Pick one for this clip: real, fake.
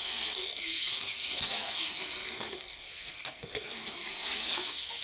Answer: fake